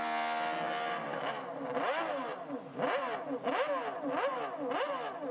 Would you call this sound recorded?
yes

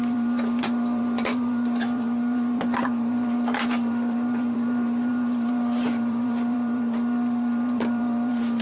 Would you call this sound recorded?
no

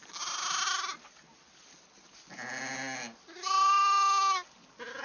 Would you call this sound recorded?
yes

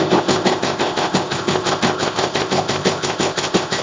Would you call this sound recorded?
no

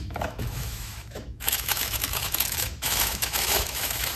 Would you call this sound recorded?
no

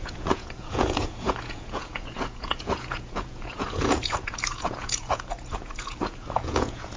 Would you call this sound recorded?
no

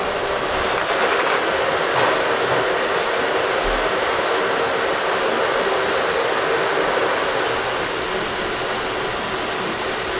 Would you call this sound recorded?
yes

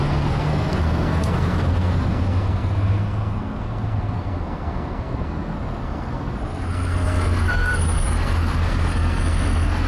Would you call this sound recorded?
no